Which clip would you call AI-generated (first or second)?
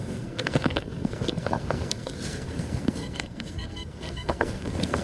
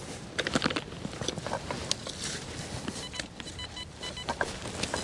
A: first